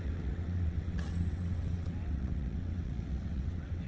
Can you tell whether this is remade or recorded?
remade